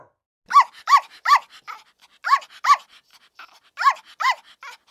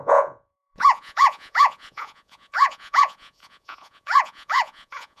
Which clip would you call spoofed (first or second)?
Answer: second